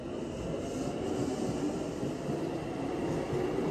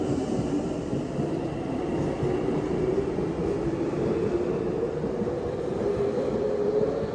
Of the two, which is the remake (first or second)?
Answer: second